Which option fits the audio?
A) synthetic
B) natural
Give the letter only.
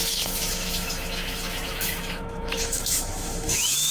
A